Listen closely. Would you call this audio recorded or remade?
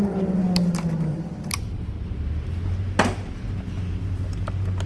recorded